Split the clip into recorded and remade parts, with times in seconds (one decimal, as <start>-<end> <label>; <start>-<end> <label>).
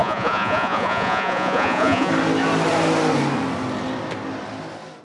0.0-2.1 remade; 2.1-5.0 recorded